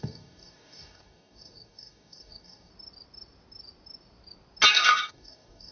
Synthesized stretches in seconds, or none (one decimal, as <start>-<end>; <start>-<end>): 0.0-2.7; 4.7-5.7